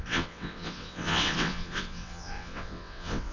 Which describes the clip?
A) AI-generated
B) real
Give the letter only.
A